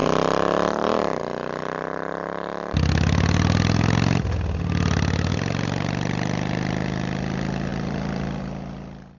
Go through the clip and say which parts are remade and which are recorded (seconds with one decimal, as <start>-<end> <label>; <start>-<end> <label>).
0.0-1.2 remade; 1.2-7.7 recorded; 7.7-8.4 remade; 8.4-9.2 recorded